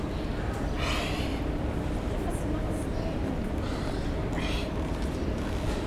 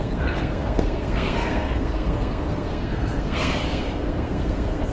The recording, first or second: first